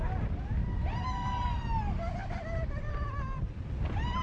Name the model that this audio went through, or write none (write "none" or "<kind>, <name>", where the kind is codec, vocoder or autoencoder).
none